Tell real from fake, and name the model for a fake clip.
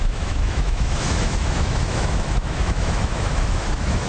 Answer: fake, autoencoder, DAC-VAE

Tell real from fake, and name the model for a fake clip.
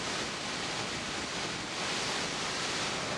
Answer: real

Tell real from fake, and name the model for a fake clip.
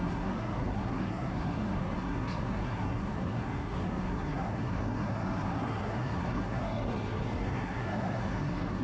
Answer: fake, codec, SNAC